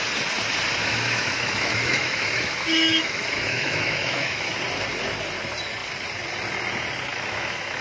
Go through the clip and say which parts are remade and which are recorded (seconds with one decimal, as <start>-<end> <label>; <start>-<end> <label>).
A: 0.0-0.8 recorded; 0.8-4.5 remade; 4.5-7.1 recorded; 7.1-7.8 remade